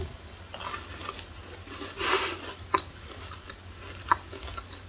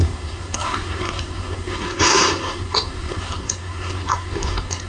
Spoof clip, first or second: second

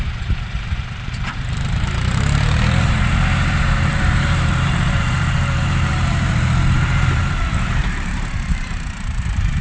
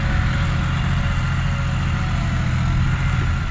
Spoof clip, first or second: first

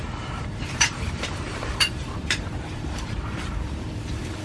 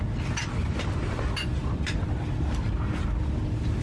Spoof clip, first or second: first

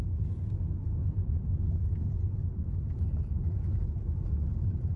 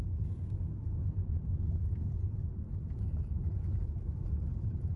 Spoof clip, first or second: second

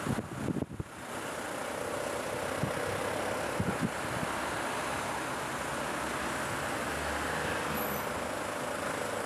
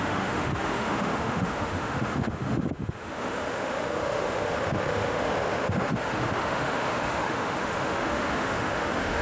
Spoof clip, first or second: second